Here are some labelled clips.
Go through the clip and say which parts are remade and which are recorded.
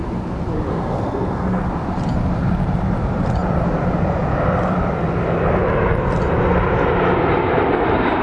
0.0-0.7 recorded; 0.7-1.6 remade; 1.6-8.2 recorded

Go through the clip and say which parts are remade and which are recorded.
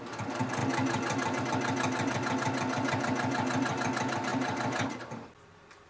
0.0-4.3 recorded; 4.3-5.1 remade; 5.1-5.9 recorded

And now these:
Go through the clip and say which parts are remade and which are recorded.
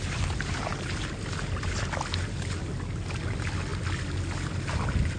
0.0-5.2 recorded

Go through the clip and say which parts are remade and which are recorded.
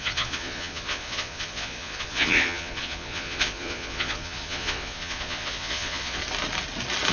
0.0-6.2 remade; 6.2-7.1 recorded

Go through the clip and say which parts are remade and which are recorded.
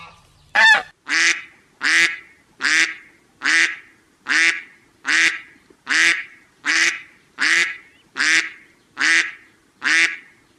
0.0-6.1 recorded; 6.1-7.8 remade; 7.8-10.6 recorded